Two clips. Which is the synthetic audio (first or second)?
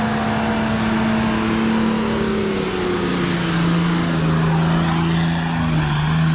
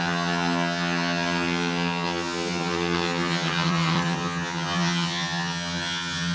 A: second